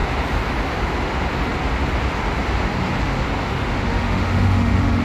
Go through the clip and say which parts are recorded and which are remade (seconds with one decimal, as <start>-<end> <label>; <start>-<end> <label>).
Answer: 0.0-3.4 recorded; 3.4-5.0 remade